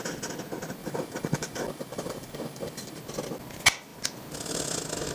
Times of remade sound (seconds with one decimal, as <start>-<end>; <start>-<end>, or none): 0.8-3.0